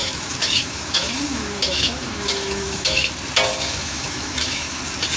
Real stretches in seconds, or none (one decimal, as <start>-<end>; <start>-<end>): 3.1-3.5; 4.8-5.2

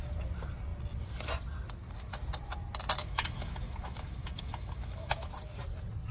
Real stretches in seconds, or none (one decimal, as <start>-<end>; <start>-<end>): 0.0-3.0; 5.3-6.1

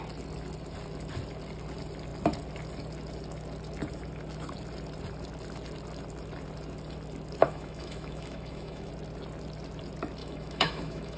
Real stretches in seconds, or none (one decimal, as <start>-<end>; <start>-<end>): 0.0-7.4; 8.9-10.2